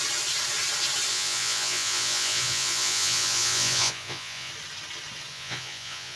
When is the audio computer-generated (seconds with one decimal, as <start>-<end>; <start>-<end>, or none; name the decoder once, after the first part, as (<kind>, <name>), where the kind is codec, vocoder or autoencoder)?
1.1-4.5 (vocoder, Vocos); 5.3-6.2